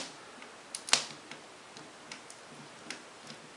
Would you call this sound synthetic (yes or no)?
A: no